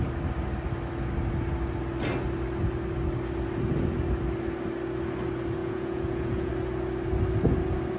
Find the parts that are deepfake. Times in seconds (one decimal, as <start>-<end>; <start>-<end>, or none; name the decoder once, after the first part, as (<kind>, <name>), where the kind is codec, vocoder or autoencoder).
5.6-6.5 (vocoder, Vocos)